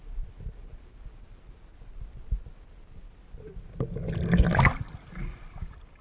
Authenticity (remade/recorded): recorded